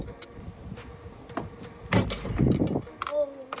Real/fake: real